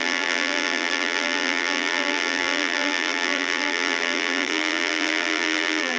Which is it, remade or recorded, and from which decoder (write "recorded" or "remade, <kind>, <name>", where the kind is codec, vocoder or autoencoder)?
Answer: remade, vocoder, BigVGAN v2